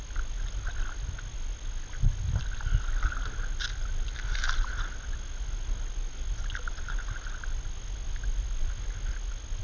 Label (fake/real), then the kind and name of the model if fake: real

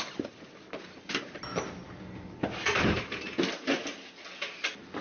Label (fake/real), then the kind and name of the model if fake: real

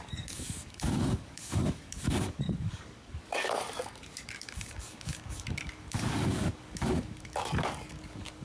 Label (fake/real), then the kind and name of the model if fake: fake, codec, DAC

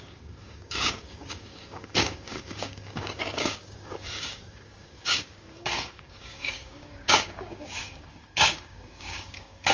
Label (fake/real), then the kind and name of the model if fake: fake, codec, DAC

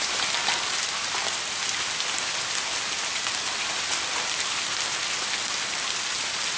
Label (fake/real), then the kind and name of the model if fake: real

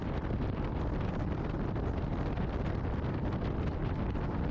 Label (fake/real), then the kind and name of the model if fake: real